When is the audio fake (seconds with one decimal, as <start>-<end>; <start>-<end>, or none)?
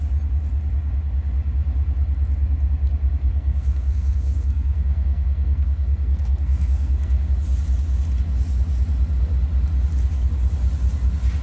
3.3-7.3